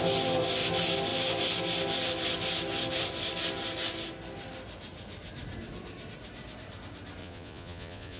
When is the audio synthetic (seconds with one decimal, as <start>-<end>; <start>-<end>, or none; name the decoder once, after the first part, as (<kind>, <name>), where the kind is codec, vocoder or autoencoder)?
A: 7.2-8.2 (vocoder, Vocos)